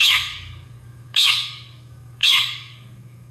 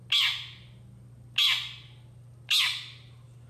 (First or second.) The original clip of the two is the second